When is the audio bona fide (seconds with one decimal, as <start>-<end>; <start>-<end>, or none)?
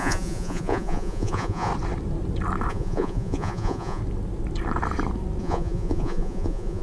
1.7-2.7; 4.0-5.4